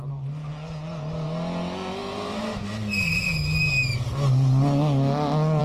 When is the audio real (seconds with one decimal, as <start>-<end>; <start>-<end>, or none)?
0.0-5.6